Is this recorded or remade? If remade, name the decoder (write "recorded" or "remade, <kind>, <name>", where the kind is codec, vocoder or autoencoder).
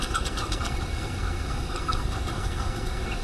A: remade, codec, SNAC